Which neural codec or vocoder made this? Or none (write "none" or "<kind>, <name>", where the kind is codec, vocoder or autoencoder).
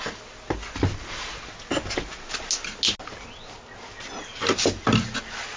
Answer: none